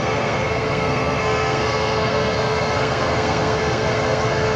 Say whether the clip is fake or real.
fake